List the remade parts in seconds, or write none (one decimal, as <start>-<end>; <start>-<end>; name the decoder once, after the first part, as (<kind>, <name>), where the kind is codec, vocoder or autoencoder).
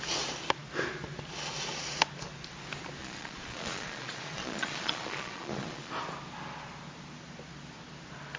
3.0-5.9 (vocoder, Vocos)